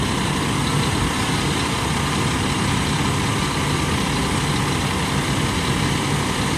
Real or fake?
real